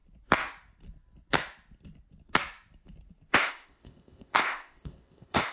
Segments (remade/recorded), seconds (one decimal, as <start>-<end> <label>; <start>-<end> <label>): 0.0-3.3 recorded; 3.3-5.5 remade